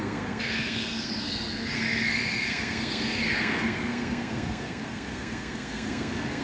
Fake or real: fake